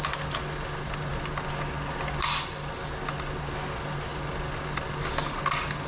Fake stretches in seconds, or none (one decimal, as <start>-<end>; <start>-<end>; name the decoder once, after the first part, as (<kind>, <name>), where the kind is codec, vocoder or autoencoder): none